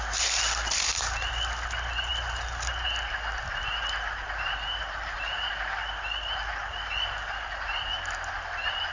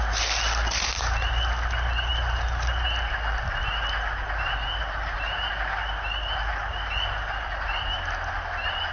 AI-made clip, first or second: first